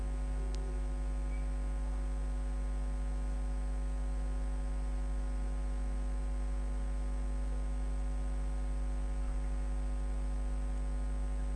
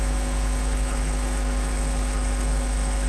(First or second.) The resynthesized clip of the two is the second